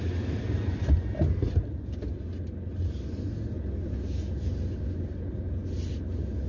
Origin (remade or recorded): recorded